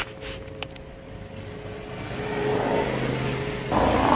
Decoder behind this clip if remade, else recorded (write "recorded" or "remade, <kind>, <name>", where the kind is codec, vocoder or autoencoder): recorded